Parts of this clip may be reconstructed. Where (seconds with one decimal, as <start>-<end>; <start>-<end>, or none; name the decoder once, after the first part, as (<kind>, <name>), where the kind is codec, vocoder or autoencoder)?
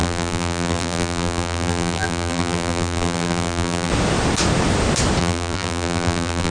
0.0-3.9 (vocoder, BigVGAN v2); 5.2-6.5